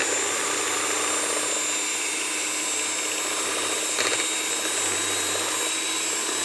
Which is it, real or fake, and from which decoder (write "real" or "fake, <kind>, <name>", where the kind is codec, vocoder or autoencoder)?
real